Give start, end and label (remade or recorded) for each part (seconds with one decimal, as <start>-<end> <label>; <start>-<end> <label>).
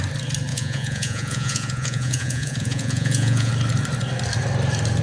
0.0-0.5 recorded; 0.5-3.5 remade; 3.5-5.0 recorded